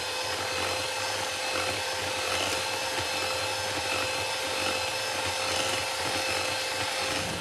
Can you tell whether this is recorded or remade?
recorded